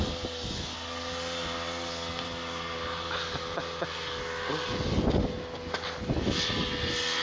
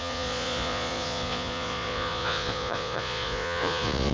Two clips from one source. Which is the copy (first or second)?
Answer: second